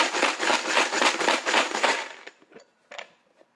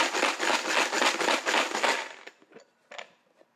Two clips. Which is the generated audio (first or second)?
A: first